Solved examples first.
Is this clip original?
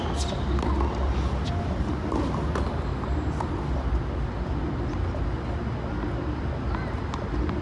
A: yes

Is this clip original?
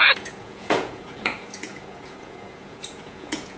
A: no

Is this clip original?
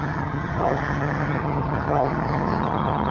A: no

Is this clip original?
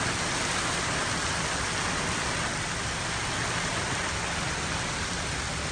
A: yes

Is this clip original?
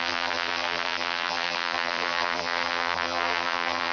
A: no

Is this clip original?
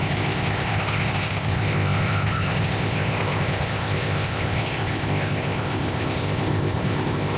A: no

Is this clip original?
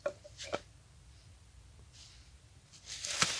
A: yes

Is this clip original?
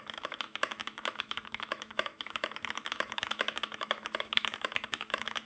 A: no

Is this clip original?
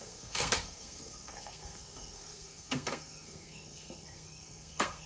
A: no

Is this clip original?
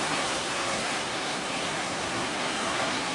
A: no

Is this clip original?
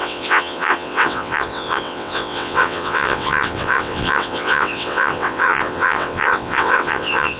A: no